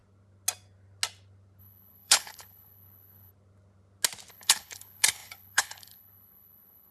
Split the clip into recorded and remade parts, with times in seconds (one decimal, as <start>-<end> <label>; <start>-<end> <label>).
0.0-1.6 recorded; 1.6-3.3 remade; 3.3-4.3 recorded; 4.3-6.9 remade